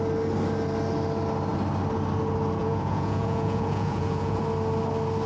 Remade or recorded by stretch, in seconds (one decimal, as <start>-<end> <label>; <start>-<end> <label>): 0.0-2.6 recorded; 2.6-4.4 remade; 4.4-5.3 recorded